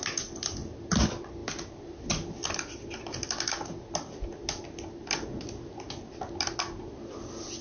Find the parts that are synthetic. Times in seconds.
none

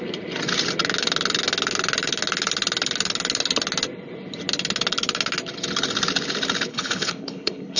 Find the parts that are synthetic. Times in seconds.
6.7-7.8 (codec, HILCodec)

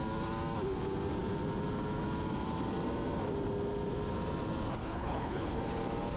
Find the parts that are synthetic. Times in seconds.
4.8-5.6 (codec, HILCodec)

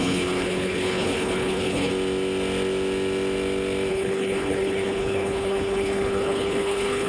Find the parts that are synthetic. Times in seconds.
0.0-1.9 (codec, HILCodec); 3.9-7.1

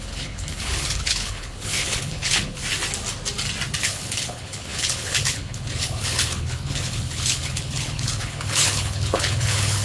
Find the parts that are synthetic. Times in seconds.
0.0-2.6 (codec, HILCodec); 3.8-9.8

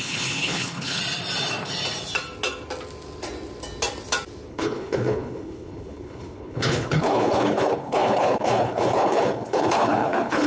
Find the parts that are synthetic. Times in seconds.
0.0-1.0 (codec, HILCodec); 4.5-10.5

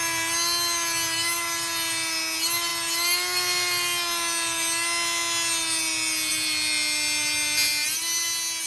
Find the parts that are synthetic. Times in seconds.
none

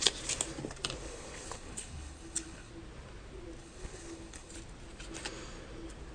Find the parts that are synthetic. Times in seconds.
1.0-2.7 (codec, HILCodec); 3.6-4.5